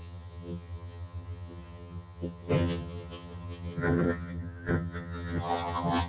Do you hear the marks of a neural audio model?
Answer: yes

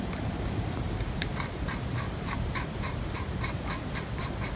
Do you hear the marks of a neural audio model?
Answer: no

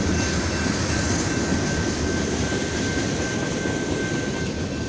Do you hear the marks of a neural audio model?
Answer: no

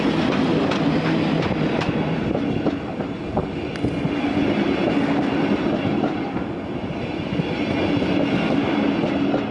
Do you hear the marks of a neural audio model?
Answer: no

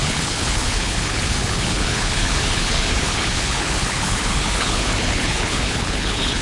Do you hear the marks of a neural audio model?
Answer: yes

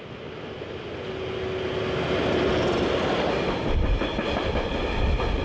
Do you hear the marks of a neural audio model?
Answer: no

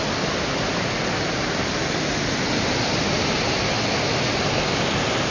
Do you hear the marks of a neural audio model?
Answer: no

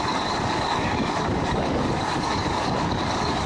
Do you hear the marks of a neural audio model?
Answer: yes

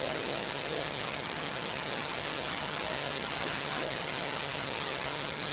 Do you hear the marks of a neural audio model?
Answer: yes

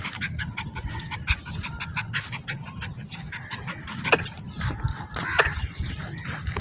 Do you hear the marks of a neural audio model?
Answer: no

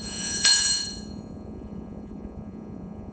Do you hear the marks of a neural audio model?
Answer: yes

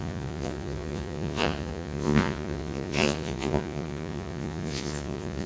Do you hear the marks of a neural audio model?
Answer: yes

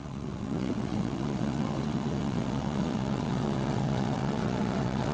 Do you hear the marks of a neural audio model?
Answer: yes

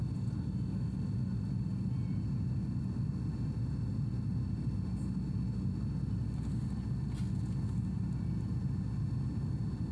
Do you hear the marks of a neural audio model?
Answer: no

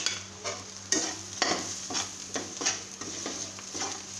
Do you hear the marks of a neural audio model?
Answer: no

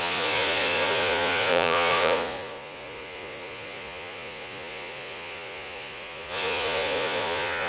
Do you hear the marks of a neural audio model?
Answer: yes